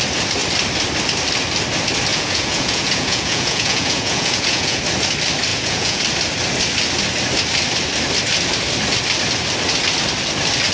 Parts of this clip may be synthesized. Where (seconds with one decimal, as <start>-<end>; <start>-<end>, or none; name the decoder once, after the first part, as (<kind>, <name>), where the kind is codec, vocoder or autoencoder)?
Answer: 2.1-4.8 (vocoder, Vocos); 5.5-6.0